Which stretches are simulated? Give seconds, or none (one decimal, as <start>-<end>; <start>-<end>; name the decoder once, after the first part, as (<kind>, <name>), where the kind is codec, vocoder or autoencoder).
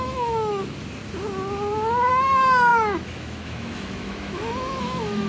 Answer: 0.0-0.6 (autoencoder, DAC-VAE); 2.1-5.3